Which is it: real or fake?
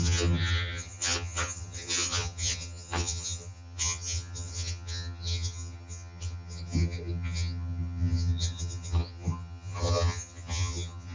fake